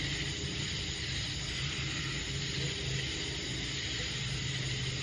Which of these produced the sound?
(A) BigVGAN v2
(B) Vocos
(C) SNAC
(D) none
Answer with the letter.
D